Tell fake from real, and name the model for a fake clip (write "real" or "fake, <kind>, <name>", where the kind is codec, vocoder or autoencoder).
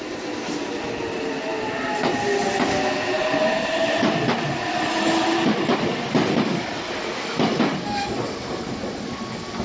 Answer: real